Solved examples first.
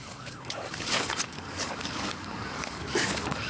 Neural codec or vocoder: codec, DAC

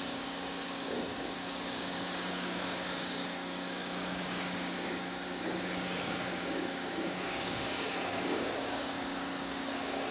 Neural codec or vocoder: codec, DAC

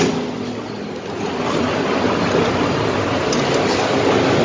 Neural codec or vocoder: none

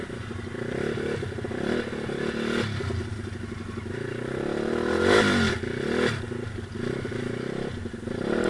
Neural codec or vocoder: none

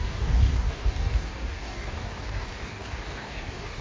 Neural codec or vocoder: codec, DAC